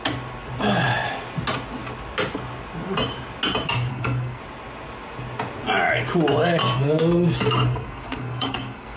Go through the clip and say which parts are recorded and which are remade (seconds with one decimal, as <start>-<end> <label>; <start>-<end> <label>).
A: 0.0-3.9 recorded; 3.9-4.4 remade; 4.4-6.6 recorded; 6.6-9.0 remade